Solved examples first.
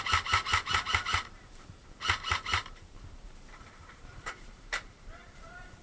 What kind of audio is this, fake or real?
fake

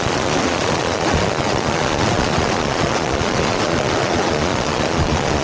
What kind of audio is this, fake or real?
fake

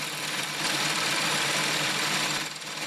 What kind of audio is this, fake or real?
fake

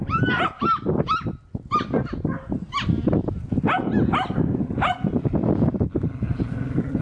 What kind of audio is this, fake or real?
real